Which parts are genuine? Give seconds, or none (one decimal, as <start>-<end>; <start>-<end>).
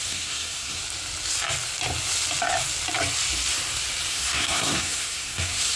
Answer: 0.8-4.1